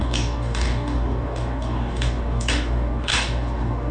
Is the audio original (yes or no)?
no